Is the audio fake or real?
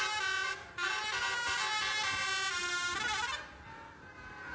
real